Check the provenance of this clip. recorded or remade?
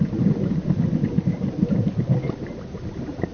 recorded